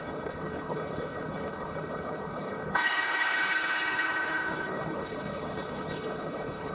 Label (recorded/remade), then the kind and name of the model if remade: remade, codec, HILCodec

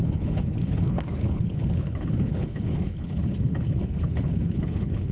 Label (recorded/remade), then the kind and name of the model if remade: remade, codec, HILCodec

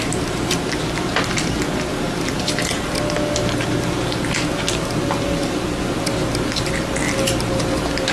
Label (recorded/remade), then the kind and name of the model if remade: recorded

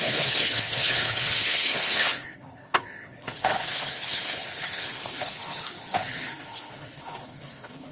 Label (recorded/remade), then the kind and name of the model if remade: remade, codec, HILCodec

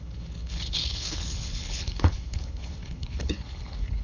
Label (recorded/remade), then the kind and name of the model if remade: remade, codec, HILCodec